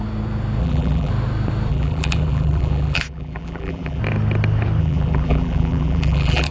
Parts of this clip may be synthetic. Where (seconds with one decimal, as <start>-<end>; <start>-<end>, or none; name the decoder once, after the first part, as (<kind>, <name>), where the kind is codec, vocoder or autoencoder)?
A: 0.6-1.1 (vocoder, BigVGAN v2); 1.7-4.0; 4.8-6.5